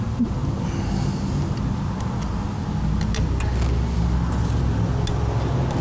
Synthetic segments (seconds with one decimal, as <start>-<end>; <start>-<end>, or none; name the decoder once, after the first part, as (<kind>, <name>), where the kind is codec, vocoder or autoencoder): none

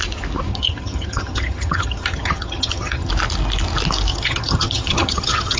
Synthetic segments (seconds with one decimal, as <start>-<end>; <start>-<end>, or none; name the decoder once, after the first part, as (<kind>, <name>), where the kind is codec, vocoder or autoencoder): 0.5-3.1 (vocoder, HiFi-GAN); 4.1-5.6